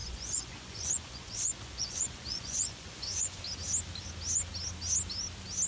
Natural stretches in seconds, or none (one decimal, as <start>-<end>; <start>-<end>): 3.4-5.7